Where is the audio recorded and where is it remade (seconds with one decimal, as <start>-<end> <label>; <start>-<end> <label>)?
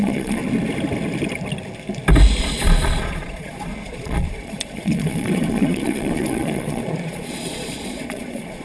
0.0-0.4 remade; 0.4-2.4 recorded; 2.4-8.6 remade